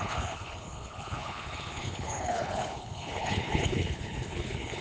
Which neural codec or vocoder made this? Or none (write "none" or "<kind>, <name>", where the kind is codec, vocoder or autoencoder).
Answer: codec, HILCodec